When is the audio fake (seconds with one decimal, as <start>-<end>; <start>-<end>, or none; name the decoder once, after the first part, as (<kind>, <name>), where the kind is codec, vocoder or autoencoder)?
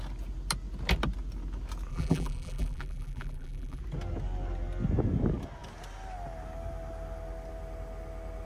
1.9-3.8 (vocoder, BigVGAN v2)